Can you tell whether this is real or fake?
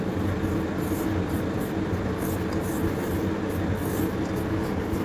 real